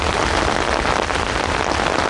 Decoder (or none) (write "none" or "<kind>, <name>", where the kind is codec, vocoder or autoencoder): none